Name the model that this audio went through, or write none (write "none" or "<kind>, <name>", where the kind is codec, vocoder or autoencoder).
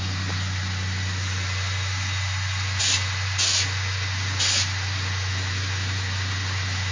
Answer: none